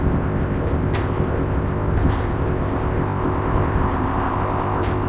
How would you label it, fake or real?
fake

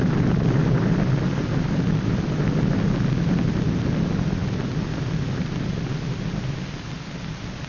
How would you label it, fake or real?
real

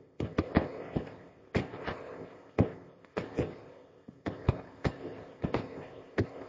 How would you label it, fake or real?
fake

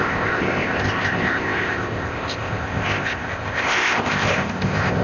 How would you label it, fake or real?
fake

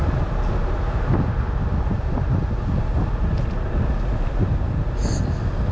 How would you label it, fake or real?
real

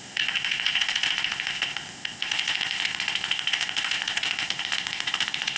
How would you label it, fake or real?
fake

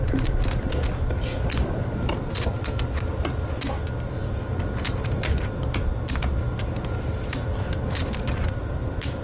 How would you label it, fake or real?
real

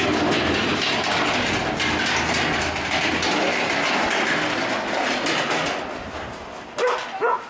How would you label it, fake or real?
real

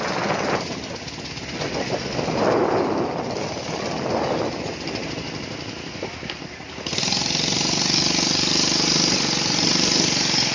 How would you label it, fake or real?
real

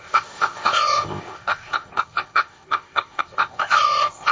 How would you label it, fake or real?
fake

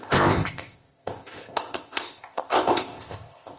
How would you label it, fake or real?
fake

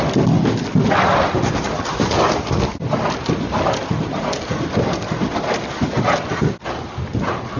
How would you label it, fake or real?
real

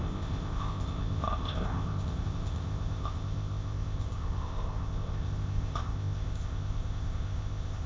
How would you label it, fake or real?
fake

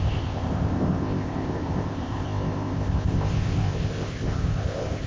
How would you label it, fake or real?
fake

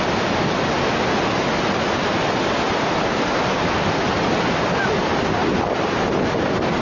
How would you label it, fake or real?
real